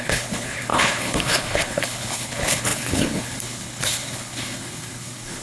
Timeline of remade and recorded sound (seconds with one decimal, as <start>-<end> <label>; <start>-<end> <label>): 0.0-5.4 remade